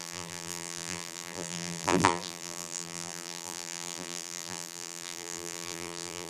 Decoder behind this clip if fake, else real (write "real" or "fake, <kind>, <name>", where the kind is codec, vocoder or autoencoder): fake, vocoder, BigVGAN v2